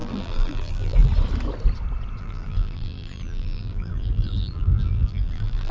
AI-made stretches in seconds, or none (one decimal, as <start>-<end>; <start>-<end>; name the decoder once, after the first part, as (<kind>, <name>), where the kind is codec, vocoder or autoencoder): 0.0-1.1 (vocoder, BigVGAN v2); 2.2-5.7